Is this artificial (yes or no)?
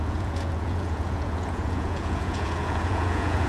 yes